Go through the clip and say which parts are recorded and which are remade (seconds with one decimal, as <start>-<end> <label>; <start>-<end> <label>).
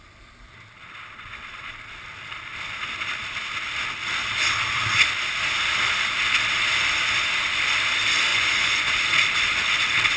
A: 0.0-8.3 recorded; 8.3-8.9 remade; 8.9-10.2 recorded